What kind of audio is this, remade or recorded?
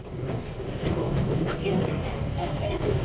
remade